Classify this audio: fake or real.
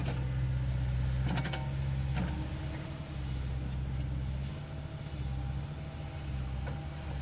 real